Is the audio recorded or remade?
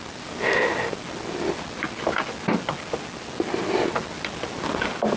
recorded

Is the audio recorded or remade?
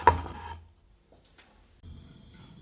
recorded